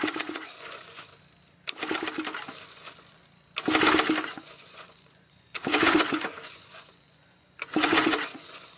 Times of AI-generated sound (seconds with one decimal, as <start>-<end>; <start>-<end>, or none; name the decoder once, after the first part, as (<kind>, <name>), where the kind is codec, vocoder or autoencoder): 0.0-1.1 (vocoder, Vocos); 2.7-3.2; 4.2-8.8